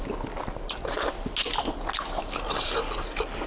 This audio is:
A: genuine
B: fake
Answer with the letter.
A